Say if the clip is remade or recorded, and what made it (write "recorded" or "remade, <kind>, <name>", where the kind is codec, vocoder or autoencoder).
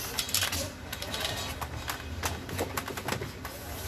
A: recorded